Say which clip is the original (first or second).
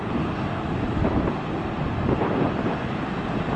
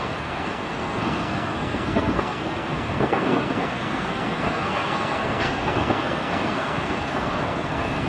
first